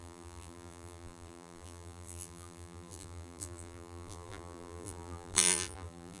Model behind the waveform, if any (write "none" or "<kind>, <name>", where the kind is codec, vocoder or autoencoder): vocoder, BigVGAN v2